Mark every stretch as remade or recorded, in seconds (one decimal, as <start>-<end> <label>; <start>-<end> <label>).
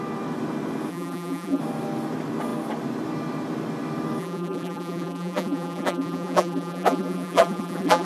0.0-0.9 recorded; 0.9-1.6 remade; 1.6-4.2 recorded; 4.2-8.1 remade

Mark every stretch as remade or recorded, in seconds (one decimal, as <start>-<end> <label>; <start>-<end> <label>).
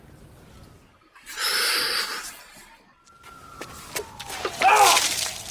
0.0-1.0 recorded; 1.0-1.5 remade; 1.5-5.5 recorded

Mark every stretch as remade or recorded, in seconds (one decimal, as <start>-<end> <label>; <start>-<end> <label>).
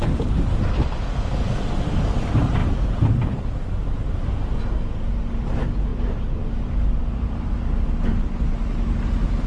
0.0-2.6 recorded; 2.6-3.4 remade; 3.4-4.0 recorded; 4.0-4.6 remade; 4.6-5.9 recorded; 5.9-7.0 remade; 7.0-9.5 recorded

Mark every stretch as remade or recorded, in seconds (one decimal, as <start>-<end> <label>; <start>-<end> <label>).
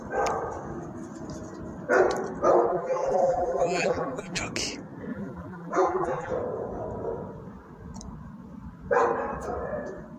0.0-2.7 recorded; 2.7-4.4 remade; 4.4-5.1 recorded; 5.1-6.3 remade; 6.3-10.2 recorded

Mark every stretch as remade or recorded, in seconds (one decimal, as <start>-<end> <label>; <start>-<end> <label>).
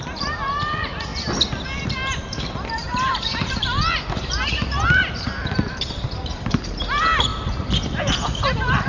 0.0-1.1 remade; 1.1-1.8 recorded; 1.8-7.3 remade; 7.3-8.9 recorded